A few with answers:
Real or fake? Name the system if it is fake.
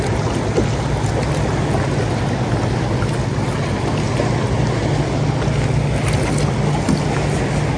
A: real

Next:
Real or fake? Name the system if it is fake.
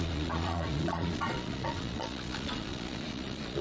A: fake, vocoder, Vocos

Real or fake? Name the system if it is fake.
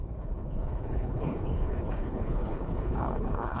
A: fake, codec, HILCodec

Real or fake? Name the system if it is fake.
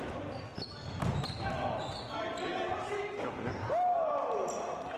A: real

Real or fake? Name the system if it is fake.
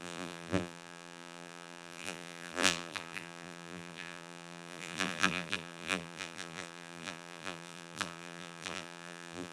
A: fake, vocoder, BigVGAN v2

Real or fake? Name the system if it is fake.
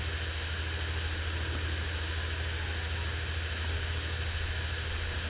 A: real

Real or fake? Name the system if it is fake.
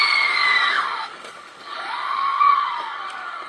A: fake, codec, DAC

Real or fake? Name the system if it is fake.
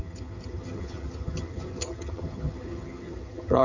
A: fake, vocoder, HiFi-GAN